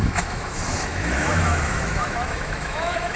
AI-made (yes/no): yes